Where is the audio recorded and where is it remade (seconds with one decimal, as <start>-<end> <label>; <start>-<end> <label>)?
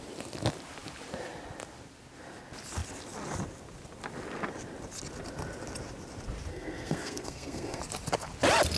0.0-6.5 recorded; 6.5-7.8 remade; 7.8-8.8 recorded